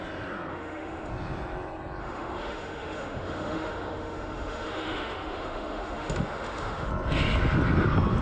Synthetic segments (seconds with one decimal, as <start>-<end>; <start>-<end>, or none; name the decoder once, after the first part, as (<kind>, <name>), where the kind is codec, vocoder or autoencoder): 0.5-1.1 (autoencoder, DAC-VAE); 2.0-6.9